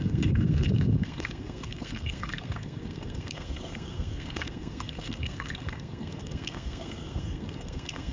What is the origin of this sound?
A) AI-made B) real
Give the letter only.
A